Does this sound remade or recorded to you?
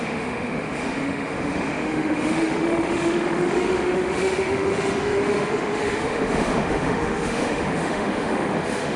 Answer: remade